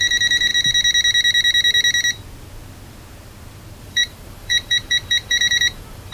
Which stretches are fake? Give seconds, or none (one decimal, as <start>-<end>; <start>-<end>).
0.0-0.5; 3.8-6.1